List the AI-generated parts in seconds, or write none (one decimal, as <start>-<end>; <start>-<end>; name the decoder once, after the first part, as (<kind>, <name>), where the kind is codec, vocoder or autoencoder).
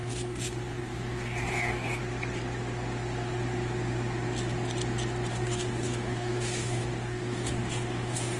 0.0-2.0 (codec, DAC); 5.3-8.4